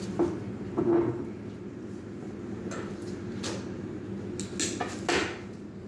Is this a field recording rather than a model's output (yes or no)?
yes